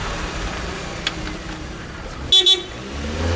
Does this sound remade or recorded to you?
recorded